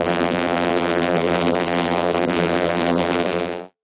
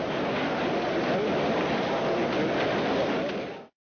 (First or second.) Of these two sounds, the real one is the second